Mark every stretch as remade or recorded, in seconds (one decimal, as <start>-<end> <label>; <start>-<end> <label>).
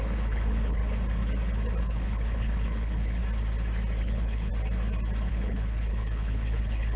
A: 0.0-0.8 remade; 0.8-1.8 recorded; 1.8-3.2 remade; 3.2-4.0 recorded; 4.0-4.5 remade; 4.5-5.3 recorded; 5.3-7.0 remade